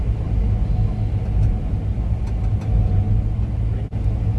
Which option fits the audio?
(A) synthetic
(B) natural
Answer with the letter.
B